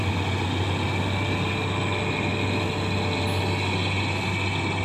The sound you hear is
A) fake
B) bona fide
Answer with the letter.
B